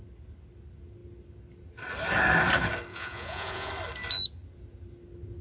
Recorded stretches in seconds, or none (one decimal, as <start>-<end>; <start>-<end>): 0.0-2.9; 3.7-5.4